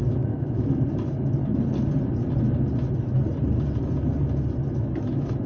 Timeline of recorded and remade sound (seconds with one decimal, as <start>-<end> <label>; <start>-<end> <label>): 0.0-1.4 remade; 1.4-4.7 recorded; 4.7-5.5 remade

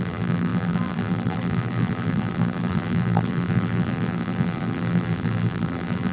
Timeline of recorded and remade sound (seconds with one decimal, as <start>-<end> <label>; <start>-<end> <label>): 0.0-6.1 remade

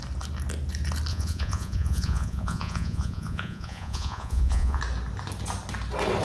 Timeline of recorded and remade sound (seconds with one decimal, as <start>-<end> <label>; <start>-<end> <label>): 0.0-1.1 recorded; 1.1-4.8 remade; 4.8-6.2 recorded